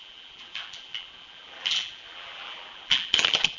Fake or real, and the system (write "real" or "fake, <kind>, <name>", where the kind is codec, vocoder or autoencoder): fake, vocoder, BigVGAN v2